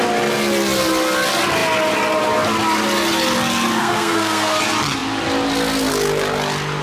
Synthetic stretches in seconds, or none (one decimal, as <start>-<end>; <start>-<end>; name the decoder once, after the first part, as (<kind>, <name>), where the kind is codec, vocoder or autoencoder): 3.8-4.6 (codec, SNAC)